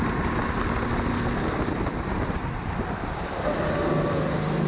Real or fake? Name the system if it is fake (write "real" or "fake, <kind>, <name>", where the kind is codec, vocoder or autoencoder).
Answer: real